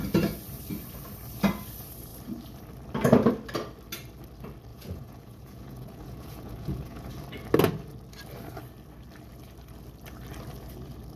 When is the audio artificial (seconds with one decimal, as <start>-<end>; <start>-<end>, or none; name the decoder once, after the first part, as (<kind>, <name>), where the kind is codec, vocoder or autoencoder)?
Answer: 4.7-7.1 (vocoder, Vocos)